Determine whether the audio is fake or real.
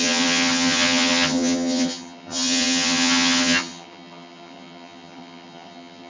fake